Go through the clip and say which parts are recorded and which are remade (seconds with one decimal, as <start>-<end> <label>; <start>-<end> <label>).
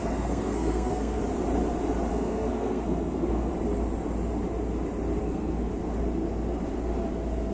0.0-1.2 remade; 1.2-2.1 recorded; 2.1-3.5 remade; 3.5-5.2 recorded; 5.2-5.7 remade; 5.7-7.5 recorded